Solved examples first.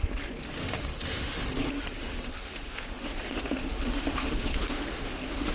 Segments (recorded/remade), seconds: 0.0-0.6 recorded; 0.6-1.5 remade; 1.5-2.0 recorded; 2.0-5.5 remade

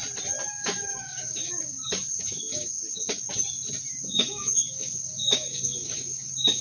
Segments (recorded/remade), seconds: 0.0-0.4 recorded; 0.4-3.2 remade; 3.2-4.0 recorded; 4.0-6.6 remade

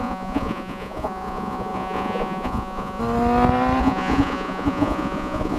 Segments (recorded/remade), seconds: 0.0-3.0 remade; 3.0-3.8 recorded; 3.8-5.6 remade

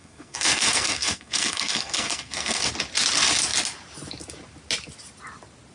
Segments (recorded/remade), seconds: 0.0-2.7 remade; 2.7-5.7 recorded

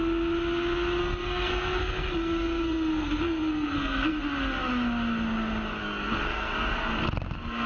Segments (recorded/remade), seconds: 0.0-1.0 recorded; 1.0-4.2 remade; 4.2-5.8 recorded; 5.8-6.9 remade; 6.9-7.7 recorded

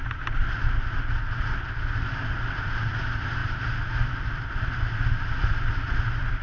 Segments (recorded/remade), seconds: 0.0-6.4 recorded

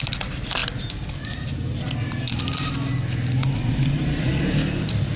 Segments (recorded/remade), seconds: 0.0-5.2 recorded

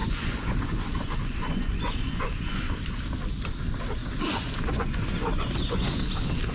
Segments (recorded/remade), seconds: 0.0-2.6 remade; 2.6-4.0 recorded; 4.0-6.0 remade; 6.0-6.5 recorded